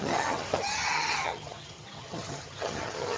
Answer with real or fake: fake